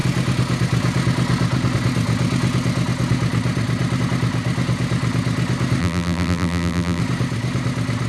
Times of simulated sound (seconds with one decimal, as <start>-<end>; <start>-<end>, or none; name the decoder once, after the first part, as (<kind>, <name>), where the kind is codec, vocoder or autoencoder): 5.8-7.0 (vocoder, BigVGAN v2)